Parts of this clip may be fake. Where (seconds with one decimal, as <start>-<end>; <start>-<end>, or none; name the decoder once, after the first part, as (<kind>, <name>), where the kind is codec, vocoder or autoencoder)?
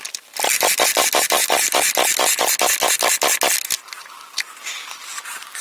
none